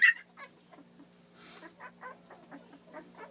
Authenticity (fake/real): real